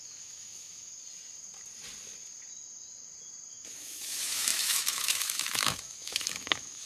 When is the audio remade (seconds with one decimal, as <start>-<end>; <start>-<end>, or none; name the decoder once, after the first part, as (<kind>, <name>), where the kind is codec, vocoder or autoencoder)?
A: 0.0-0.9 (autoencoder, DAC-VAE); 3.5-6.9